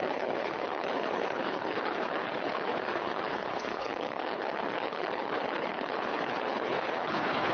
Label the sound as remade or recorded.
remade